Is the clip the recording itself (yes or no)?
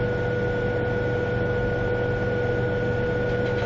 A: yes